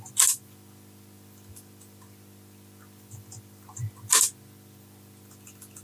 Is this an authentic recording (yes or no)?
yes